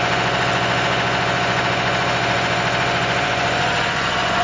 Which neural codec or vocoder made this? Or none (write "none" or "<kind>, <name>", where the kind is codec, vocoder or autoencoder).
vocoder, Vocos